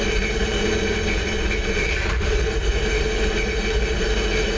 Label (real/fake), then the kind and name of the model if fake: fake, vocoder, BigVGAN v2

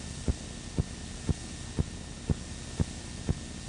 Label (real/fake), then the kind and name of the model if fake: real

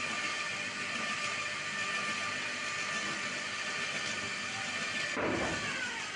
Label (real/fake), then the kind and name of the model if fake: real